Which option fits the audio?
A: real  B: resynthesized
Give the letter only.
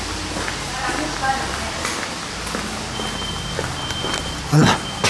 A